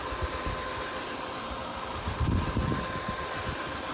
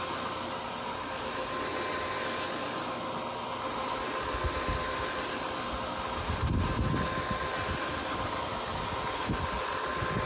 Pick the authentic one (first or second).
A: second